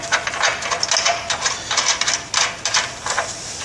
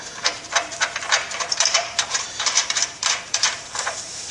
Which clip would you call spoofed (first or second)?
second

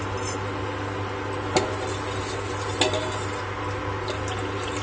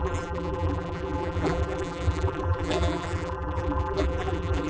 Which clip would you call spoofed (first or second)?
second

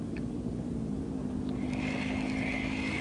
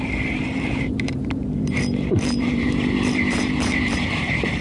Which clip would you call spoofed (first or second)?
second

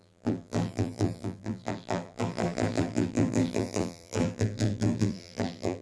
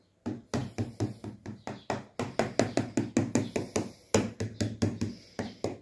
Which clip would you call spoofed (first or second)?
first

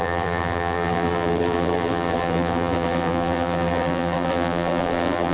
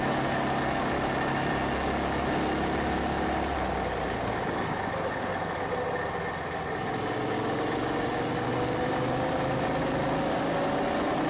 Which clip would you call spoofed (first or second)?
first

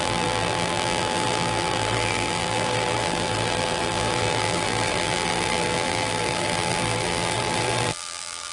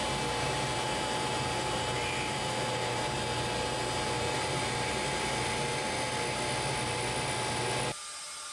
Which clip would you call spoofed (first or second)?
first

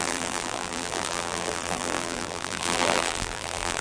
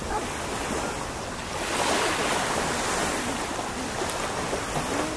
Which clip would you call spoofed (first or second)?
first